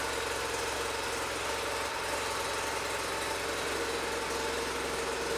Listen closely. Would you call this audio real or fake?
real